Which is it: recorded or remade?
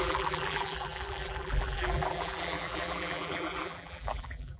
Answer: remade